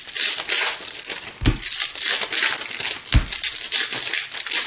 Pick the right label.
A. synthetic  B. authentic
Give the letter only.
B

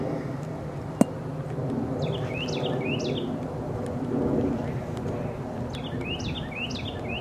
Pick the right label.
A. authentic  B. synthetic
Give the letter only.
A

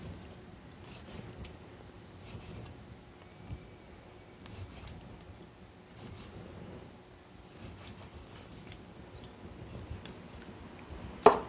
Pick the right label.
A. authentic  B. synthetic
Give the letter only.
A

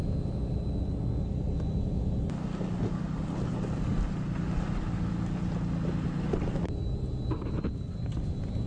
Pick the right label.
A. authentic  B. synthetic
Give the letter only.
A